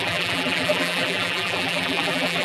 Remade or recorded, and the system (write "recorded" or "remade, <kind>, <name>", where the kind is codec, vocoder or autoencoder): remade, vocoder, BigVGAN v2